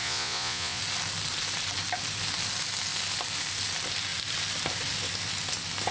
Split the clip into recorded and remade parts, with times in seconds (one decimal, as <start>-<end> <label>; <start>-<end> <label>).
0.0-0.8 remade; 0.8-5.9 recorded